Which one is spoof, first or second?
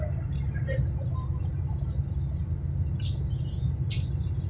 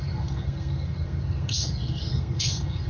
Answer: second